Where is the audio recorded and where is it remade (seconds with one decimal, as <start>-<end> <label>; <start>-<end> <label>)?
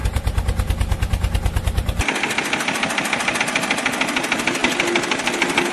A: 0.0-3.4 remade; 3.4-5.7 recorded